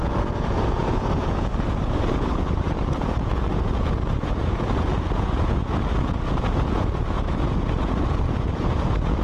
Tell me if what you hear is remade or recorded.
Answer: remade